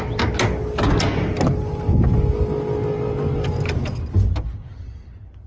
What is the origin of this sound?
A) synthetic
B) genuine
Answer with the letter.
B